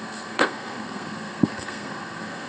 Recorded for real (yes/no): no